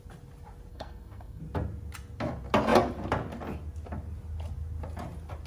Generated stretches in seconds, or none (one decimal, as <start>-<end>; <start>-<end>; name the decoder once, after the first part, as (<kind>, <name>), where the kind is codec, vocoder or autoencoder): 0.7-1.4 (codec, SNAC)